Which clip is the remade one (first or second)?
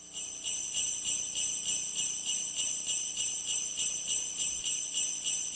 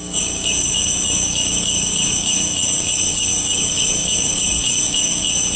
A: second